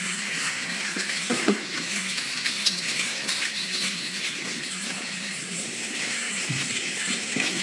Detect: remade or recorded remade